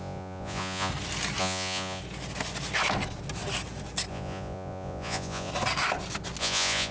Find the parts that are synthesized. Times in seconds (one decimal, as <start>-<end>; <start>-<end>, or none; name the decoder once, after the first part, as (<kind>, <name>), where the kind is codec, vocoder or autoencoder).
0.0-0.9 (vocoder, Vocos); 1.4-2.0; 4.1-5.5; 6.4-6.9